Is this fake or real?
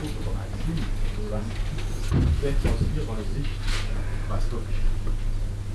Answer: real